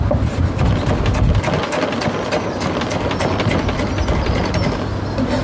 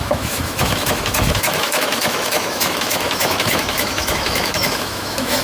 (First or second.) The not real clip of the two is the second